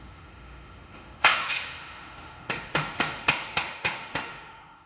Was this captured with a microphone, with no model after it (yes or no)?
no